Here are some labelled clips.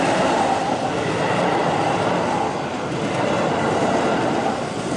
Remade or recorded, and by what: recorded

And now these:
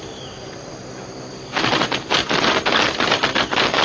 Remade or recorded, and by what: recorded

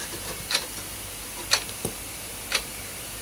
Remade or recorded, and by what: remade, vocoder, BigVGAN v2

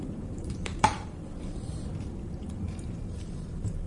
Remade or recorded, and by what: remade, vocoder, BigVGAN v2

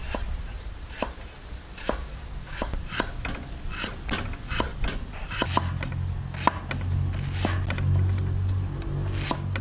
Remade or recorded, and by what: recorded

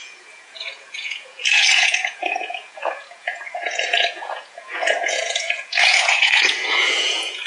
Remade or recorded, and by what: remade, vocoder, Vocos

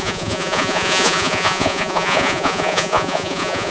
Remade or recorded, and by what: remade, vocoder, Vocos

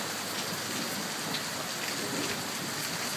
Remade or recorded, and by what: recorded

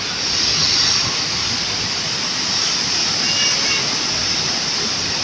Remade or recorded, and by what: recorded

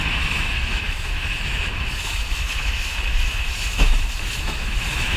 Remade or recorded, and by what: remade, autoencoder, DAC-VAE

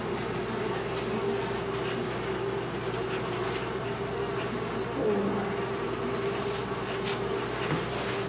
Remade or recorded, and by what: recorded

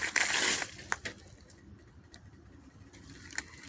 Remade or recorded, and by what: recorded